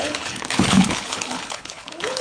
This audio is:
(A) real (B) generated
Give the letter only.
B